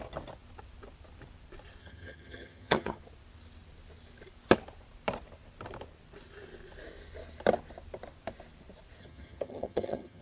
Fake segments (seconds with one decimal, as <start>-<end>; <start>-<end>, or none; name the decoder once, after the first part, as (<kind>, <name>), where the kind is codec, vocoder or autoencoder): 1.8-3.0 (vocoder, HiFi-GAN); 9.0-10.2